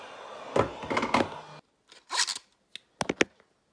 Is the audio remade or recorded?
recorded